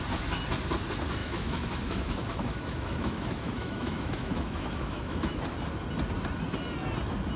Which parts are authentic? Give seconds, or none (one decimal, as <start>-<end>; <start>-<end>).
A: 0.0-1.2; 5.4-7.4